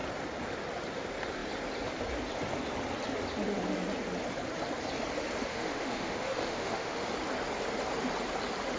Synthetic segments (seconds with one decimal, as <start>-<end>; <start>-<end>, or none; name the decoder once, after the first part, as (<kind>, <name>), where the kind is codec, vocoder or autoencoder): 5.5-7.1 (autoencoder, DAC-VAE)